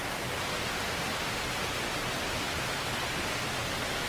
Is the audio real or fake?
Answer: real